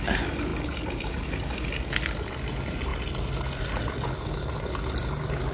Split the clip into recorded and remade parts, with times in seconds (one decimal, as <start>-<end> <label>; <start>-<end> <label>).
0.0-5.5 recorded

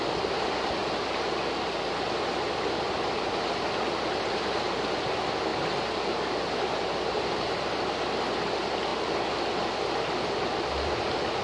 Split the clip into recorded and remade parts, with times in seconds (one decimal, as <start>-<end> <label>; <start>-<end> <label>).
0.0-11.4 recorded

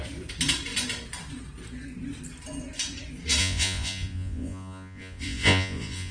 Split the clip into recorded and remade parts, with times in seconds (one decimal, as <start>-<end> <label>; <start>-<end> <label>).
0.0-3.4 recorded; 3.4-6.1 remade

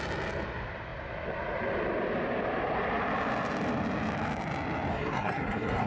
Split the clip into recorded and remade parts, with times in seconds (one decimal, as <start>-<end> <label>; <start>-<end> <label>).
0.0-4.9 recorded; 4.9-5.9 remade

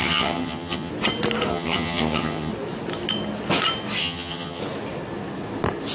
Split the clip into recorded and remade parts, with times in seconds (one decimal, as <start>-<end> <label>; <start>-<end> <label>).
0.0-0.9 remade; 0.9-1.5 recorded; 1.5-2.5 remade; 2.5-4.0 recorded; 4.0-4.6 remade; 4.6-5.9 recorded

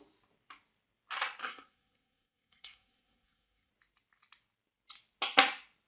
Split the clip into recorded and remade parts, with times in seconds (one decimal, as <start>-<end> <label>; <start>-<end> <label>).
0.0-1.4 recorded; 1.4-3.7 remade; 3.7-5.9 recorded

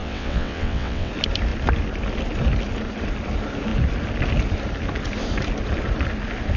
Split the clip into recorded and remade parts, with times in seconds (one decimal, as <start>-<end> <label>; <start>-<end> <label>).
0.0-1.1 remade; 1.1-6.6 recorded

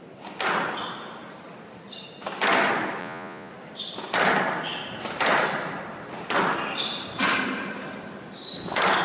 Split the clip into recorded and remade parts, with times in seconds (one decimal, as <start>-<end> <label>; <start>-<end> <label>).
0.0-3.0 recorded; 3.0-3.5 remade; 3.5-9.0 recorded